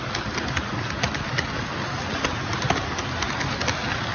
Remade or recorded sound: recorded